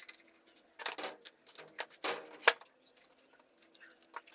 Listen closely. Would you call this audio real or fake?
real